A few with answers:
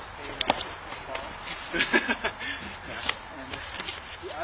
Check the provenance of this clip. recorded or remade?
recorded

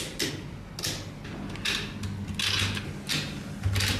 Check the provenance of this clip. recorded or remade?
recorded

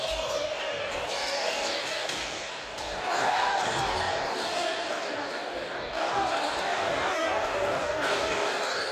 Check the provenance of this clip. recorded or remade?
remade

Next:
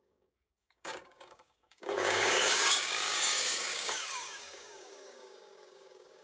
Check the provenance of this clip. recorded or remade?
remade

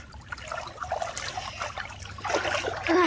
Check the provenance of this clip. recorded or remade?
recorded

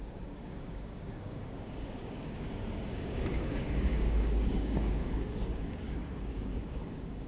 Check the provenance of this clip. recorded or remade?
remade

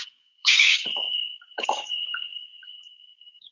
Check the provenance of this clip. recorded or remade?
remade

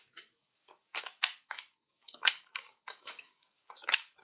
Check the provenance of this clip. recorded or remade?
remade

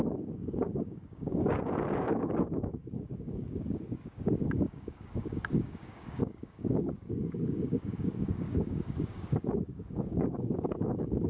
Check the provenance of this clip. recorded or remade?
remade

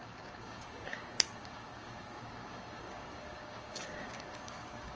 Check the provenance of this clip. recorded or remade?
remade